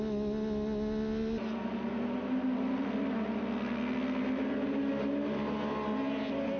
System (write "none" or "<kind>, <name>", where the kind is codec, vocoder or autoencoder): none